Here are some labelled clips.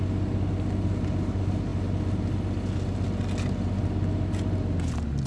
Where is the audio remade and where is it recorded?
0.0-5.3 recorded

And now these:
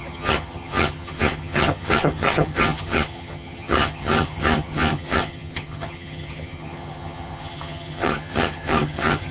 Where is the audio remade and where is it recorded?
0.0-9.3 remade

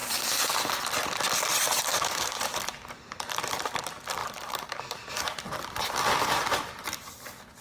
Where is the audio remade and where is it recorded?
0.0-0.7 remade; 0.7-1.9 recorded; 1.9-2.5 remade; 2.5-4.2 recorded; 4.2-5.1 remade; 5.1-7.6 recorded

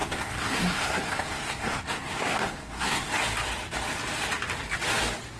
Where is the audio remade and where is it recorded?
0.0-3.1 remade; 3.1-5.4 recorded